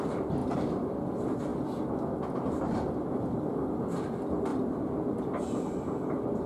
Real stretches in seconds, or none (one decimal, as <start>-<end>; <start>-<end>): 0.0-6.5